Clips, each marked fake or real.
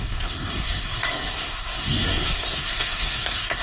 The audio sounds fake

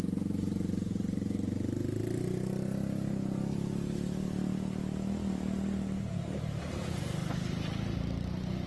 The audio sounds real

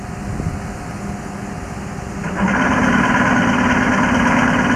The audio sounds real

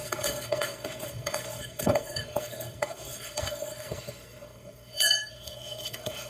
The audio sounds fake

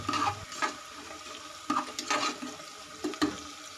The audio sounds real